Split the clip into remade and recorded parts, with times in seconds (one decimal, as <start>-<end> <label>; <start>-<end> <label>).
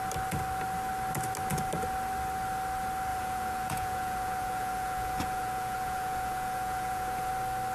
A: 0.0-3.1 recorded; 3.1-7.3 remade; 7.3-7.7 recorded